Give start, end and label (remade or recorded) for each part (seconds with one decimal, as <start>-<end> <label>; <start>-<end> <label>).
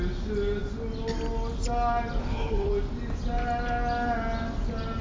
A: 0.0-2.2 recorded; 2.2-2.7 remade; 2.7-5.0 recorded